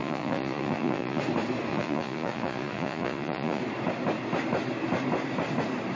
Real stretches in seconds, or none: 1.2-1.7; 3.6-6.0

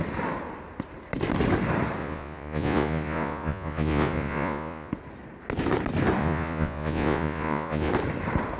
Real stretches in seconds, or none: 0.0-2.0; 4.9-6.2; 7.9-8.6

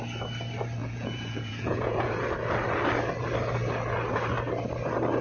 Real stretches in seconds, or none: 0.0-0.8; 2.1-5.2

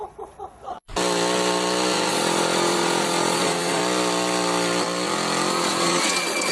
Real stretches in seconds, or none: 0.9-2.1; 3.8-5.5

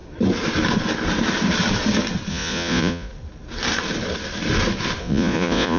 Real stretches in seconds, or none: 0.0-2.3; 3.1-5.0